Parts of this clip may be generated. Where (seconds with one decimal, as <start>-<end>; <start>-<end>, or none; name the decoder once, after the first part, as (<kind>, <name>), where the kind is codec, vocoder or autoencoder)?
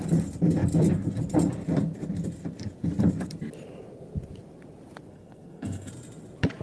5.1-5.9 (codec, SNAC)